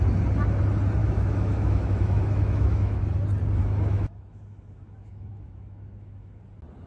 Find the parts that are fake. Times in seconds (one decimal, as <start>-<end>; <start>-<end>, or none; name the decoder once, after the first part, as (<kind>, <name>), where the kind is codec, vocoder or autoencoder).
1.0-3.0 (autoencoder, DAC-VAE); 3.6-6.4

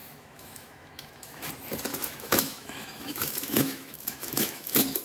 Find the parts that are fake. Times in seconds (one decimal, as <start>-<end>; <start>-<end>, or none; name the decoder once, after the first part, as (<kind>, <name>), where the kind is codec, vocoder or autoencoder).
0.0-1.5 (autoencoder, DAC-VAE); 1.9-5.0

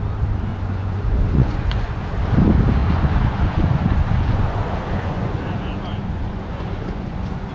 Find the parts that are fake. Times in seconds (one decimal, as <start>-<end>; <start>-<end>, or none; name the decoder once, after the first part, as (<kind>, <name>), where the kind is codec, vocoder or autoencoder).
0.5-2.0 (vocoder, Vocos); 2.8-7.5

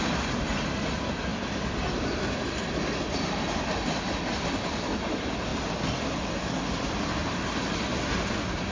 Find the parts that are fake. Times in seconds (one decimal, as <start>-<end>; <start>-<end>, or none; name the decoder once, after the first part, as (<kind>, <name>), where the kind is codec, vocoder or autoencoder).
none